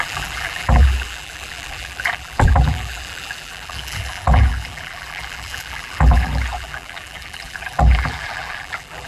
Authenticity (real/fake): fake